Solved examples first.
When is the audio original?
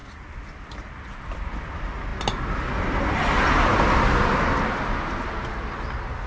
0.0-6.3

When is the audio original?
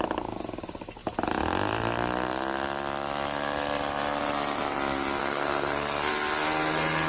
0.0-5.2; 6.1-7.1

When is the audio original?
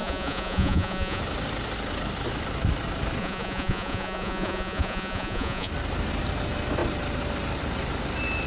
1.2-3.2; 5.7-8.5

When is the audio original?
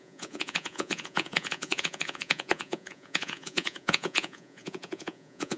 none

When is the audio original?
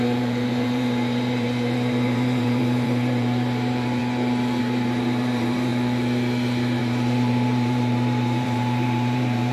4.0-4.6; 5.7-6.8